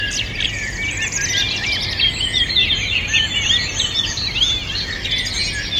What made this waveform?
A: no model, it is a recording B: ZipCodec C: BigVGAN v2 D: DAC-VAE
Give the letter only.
A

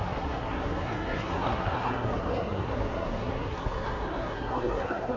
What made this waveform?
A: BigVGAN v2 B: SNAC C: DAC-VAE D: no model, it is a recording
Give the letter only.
B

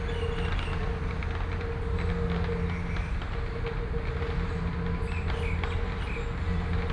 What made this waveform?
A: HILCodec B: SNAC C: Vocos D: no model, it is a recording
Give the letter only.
D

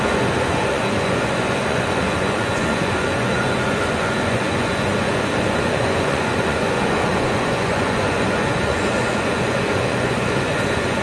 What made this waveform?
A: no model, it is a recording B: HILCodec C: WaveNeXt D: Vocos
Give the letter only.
D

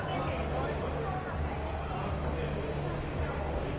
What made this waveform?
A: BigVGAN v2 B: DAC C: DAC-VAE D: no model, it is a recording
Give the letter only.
D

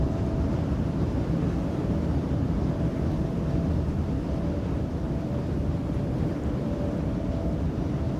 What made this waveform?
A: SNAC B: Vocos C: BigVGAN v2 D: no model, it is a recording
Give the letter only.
C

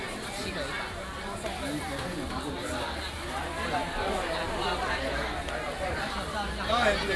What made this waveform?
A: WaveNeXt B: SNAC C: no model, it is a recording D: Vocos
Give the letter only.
C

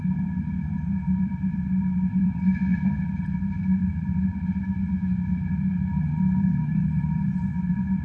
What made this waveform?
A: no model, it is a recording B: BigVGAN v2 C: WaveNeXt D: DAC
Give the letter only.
B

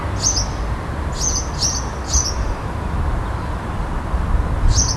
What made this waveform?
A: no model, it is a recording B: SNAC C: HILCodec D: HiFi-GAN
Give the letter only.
A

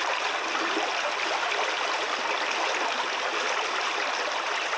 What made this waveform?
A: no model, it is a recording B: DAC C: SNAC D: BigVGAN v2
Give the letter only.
A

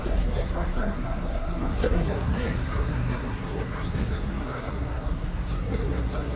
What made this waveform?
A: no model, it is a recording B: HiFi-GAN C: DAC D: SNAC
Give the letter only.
D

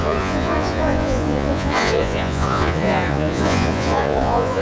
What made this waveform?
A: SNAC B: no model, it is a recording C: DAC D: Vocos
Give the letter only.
D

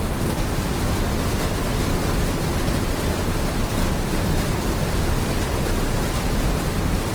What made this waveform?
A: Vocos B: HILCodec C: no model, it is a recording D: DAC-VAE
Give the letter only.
C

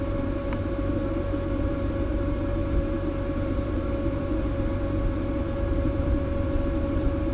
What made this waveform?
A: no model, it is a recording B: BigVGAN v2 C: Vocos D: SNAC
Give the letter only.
B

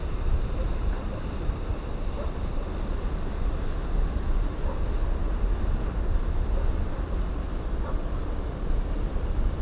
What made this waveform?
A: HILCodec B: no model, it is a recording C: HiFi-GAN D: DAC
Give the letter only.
B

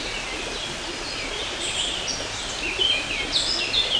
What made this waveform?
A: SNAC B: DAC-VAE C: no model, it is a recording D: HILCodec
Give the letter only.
C